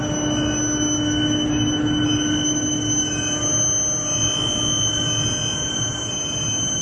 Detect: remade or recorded recorded